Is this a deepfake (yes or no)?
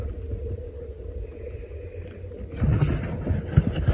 no